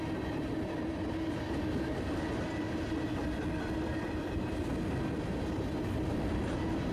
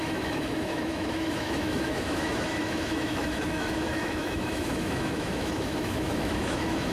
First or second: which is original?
first